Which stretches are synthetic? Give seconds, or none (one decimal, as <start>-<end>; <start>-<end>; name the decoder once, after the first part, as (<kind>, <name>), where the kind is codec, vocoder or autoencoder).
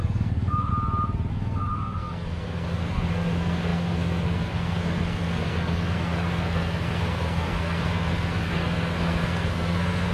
0.0-0.7 (codec, SNAC); 1.3-10.1